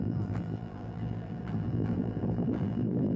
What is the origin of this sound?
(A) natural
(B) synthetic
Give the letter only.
B